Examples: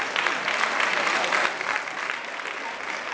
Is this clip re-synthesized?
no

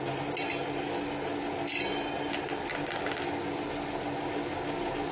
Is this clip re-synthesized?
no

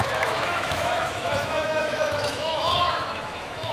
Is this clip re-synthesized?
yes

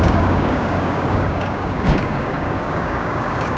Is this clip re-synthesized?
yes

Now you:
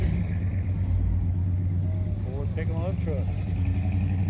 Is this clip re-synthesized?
no